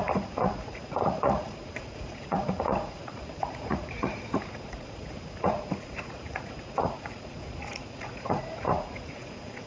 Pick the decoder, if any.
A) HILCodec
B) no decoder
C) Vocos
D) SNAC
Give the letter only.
C